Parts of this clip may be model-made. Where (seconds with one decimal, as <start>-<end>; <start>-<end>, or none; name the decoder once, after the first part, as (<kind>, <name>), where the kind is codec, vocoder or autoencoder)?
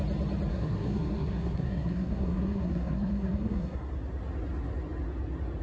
0.5-3.9 (codec, SNAC)